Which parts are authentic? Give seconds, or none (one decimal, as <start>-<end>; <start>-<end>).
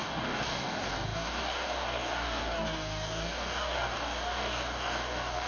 none